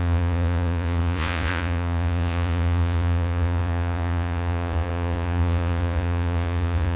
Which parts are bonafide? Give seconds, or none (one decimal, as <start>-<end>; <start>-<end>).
none